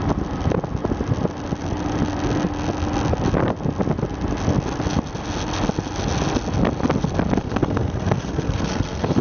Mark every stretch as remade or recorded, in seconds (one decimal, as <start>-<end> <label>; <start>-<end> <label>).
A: 0.0-7.4 recorded; 7.4-9.2 remade